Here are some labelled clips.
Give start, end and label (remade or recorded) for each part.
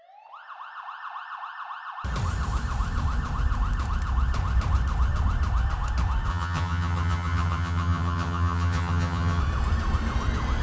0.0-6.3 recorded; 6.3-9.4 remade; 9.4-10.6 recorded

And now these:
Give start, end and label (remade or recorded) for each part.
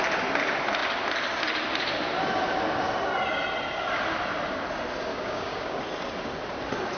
0.0-5.1 recorded; 5.1-5.8 remade; 5.8-7.0 recorded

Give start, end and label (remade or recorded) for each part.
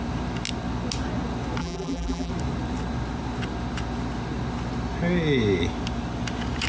0.0-1.6 recorded; 1.6-2.3 remade; 2.3-6.7 recorded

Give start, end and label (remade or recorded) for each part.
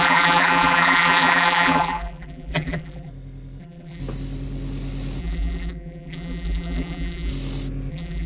0.0-3.1 remade; 3.1-3.6 recorded; 3.6-4.0 remade; 4.0-5.2 recorded; 5.2-7.3 remade; 7.3-7.9 recorded; 7.9-8.3 remade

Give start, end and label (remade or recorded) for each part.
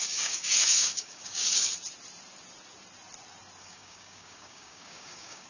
0.0-1.7 remade; 1.7-3.6 recorded; 3.6-5.5 remade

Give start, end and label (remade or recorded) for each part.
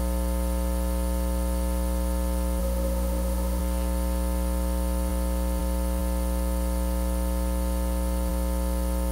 0.0-2.6 recorded; 2.6-3.6 remade; 3.6-9.1 recorded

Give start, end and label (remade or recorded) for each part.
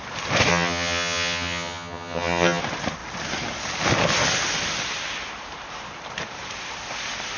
0.0-0.5 recorded; 0.5-2.6 remade; 2.6-7.4 recorded